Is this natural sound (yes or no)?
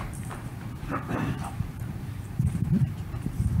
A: no